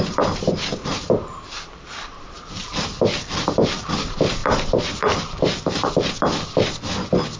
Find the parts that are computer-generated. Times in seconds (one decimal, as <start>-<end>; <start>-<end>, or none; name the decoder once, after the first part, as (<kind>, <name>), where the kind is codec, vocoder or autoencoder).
0.8-3.9 (vocoder, BigVGAN v2); 4.4-6.1